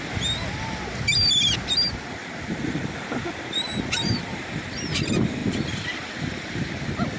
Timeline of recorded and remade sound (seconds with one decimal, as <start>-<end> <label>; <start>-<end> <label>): 0.0-7.2 recorded